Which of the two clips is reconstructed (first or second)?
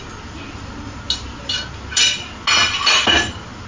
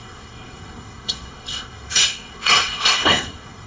second